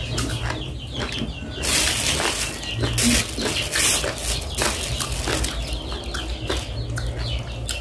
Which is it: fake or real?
real